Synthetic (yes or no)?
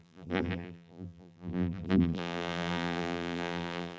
yes